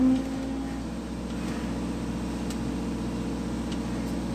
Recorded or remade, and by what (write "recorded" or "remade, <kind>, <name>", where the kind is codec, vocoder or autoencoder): recorded